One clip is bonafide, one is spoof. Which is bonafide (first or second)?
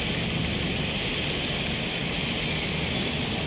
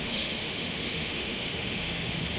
first